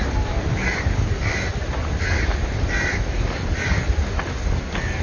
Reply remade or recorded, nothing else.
recorded